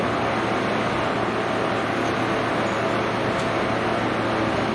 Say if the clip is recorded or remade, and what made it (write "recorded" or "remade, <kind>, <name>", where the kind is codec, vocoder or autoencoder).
recorded